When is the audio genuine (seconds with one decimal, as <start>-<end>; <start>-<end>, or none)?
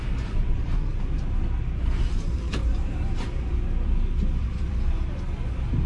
0.0-5.9